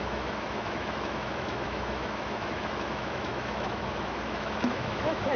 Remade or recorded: remade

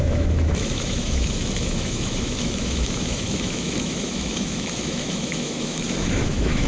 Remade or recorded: remade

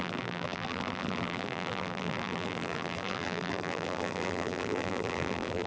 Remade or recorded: remade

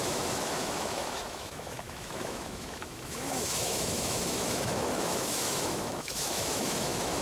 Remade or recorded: remade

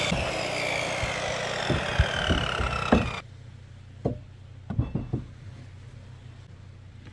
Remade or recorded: recorded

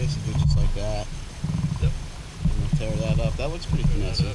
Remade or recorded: recorded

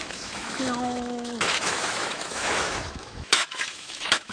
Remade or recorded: remade